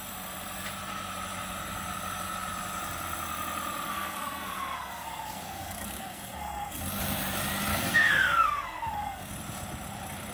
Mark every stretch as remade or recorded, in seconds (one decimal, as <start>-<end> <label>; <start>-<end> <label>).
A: 0.0-3.9 recorded; 3.9-6.8 remade; 6.8-7.7 recorded; 7.7-9.3 remade; 9.3-10.3 recorded